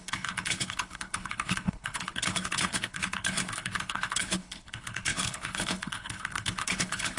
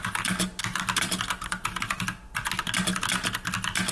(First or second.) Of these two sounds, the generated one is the first